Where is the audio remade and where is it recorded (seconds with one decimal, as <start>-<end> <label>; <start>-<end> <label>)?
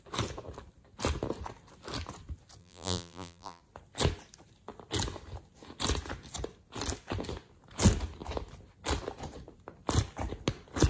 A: 0.0-2.6 recorded; 2.6-3.6 remade; 3.6-10.9 recorded